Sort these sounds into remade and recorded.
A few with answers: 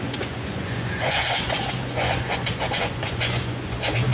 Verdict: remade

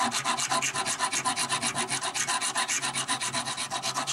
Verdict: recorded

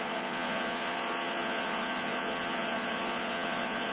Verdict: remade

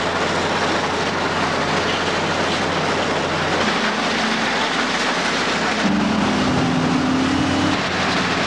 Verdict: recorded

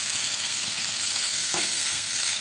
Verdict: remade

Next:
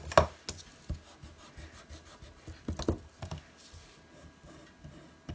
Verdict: recorded